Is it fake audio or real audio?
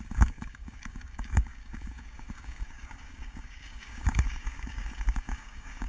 fake